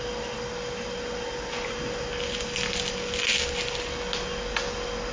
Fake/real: real